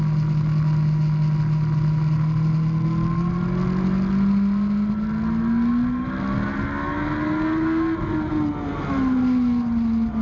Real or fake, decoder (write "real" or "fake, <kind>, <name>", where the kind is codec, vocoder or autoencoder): real